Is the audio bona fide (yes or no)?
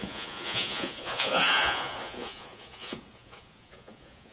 no